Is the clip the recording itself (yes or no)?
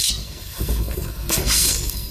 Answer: no